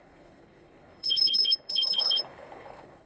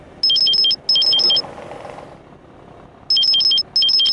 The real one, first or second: second